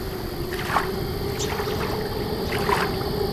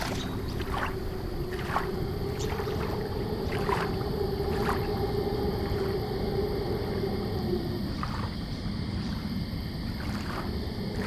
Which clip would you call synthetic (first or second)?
second